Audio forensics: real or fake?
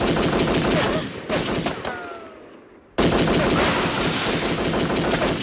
real